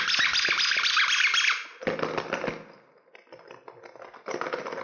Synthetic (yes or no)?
no